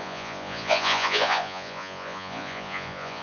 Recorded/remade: remade